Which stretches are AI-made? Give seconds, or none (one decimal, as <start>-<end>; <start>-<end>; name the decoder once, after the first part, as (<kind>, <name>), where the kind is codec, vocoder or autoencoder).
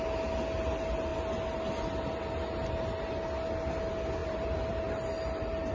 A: 4.2-4.8 (vocoder, BigVGAN v2)